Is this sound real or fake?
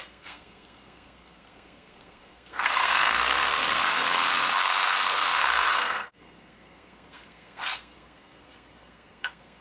fake